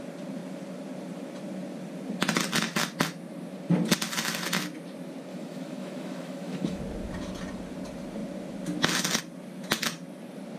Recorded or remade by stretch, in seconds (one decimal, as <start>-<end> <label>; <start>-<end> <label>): 0.0-5.3 recorded; 5.3-6.8 remade; 6.8-10.6 recorded